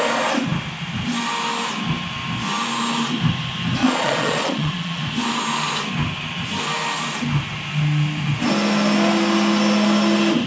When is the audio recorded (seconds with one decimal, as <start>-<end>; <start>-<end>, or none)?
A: 0.0-3.8; 5.0-10.5